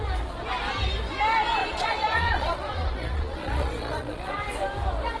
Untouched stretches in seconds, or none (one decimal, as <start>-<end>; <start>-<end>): 0.0-1.6; 4.3-5.2